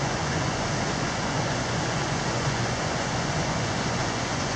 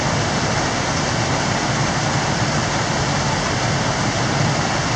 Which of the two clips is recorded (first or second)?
second